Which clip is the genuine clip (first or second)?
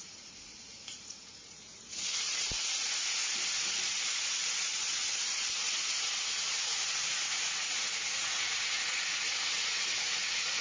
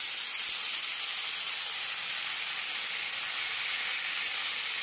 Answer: second